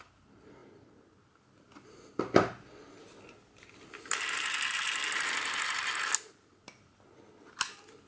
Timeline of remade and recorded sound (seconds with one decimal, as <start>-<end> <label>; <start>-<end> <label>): 0.0-8.1 recorded